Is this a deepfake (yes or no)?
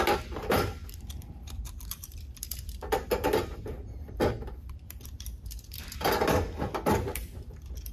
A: yes